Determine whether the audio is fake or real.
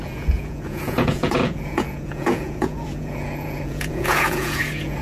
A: fake